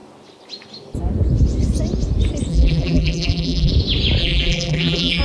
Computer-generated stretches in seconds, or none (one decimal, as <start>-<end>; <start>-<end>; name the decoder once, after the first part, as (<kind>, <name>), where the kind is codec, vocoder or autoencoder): 2.5-3.7 (vocoder, BigVGAN v2); 4.2-5.2